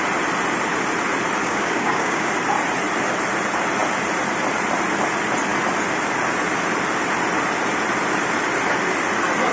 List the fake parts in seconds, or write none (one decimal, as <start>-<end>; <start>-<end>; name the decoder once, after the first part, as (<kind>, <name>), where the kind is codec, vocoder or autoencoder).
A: 1.4-2.3 (codec, DAC)